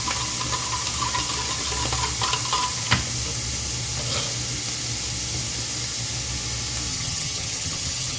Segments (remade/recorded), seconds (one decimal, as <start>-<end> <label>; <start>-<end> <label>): 0.0-6.9 recorded; 6.9-8.2 remade